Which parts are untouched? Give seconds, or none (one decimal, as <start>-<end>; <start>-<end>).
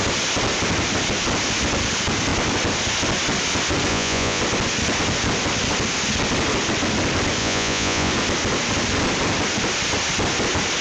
0.0-3.9; 4.4-7.4; 8.1-10.8